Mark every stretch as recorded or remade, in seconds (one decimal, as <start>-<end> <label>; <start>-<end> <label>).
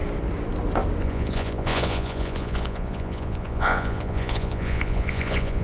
0.0-1.0 recorded; 1.0-5.6 remade